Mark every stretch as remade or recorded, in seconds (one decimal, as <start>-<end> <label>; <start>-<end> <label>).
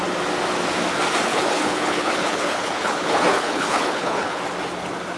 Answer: 0.0-1.3 recorded; 1.3-4.4 remade; 4.4-5.2 recorded